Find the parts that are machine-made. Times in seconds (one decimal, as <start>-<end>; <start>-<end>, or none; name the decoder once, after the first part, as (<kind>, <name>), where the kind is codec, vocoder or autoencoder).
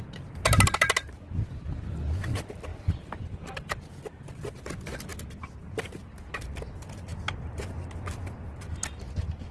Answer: none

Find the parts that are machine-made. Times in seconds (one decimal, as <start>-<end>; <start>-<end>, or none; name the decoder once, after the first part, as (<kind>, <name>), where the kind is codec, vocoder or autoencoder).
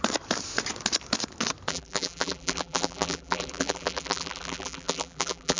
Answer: 1.7-5.6 (vocoder, BigVGAN v2)